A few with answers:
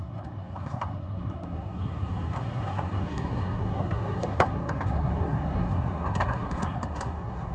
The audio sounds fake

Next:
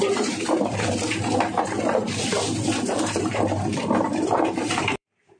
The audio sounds fake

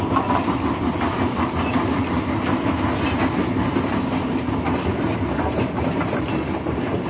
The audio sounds real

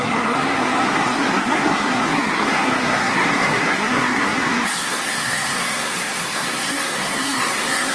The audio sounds fake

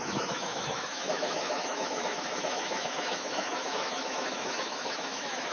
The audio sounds fake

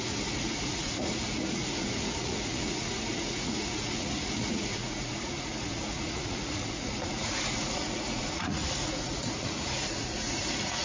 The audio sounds fake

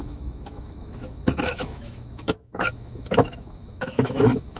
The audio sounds fake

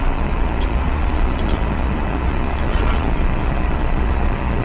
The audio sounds fake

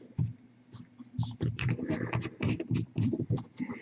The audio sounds fake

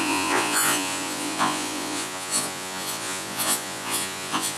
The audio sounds fake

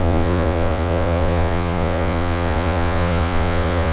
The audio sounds fake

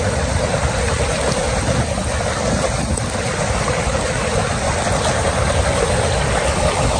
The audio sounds real